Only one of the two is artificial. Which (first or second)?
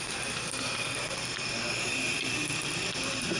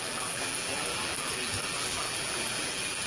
second